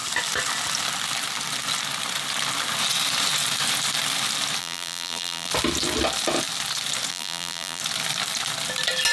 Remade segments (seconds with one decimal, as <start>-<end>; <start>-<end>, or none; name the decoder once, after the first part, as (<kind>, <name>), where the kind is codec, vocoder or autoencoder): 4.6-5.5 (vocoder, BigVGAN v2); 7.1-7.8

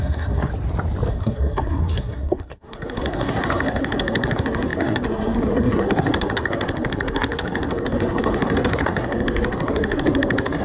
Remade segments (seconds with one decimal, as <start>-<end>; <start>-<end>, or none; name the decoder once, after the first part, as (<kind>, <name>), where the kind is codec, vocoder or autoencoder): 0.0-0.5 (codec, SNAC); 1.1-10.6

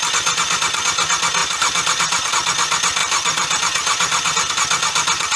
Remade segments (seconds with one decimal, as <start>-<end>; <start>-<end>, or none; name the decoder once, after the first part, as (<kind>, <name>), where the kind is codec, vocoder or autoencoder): 1.4-2.3 (vocoder, BigVGAN v2); 3.0-4.5